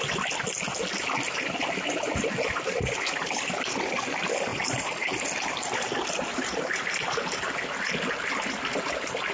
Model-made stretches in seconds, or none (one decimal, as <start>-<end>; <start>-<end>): none